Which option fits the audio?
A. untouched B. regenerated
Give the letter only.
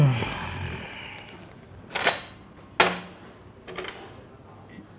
A